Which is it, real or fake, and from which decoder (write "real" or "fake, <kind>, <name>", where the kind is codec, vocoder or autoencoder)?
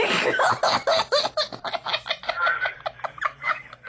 real